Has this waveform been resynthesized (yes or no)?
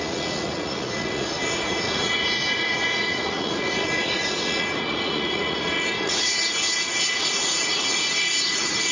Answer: yes